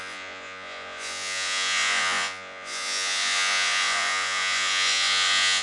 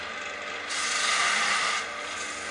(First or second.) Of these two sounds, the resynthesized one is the first